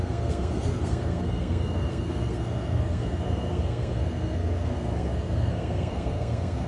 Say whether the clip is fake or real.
fake